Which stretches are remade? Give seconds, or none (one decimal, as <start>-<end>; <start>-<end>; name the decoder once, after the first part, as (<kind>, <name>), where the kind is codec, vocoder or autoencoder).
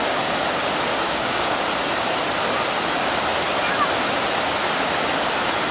0.9-1.6 (codec, DAC)